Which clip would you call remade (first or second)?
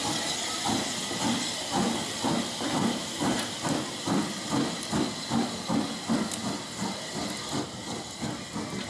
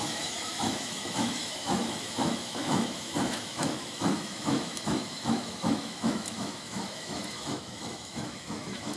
second